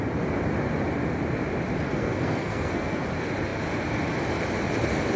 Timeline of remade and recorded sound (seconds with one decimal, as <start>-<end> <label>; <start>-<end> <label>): 0.0-1.9 recorded; 1.9-3.0 remade; 3.0-5.2 recorded